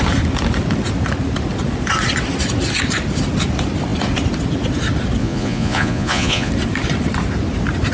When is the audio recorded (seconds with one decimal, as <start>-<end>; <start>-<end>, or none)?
0.0-5.2; 6.5-7.9